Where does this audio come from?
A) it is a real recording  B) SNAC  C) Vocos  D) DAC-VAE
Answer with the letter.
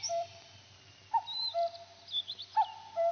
A